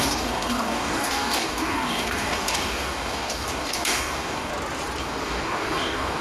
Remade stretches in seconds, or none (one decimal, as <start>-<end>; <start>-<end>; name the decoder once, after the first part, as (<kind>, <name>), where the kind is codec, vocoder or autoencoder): 0.0-4.5 (codec, DAC); 5.0-6.2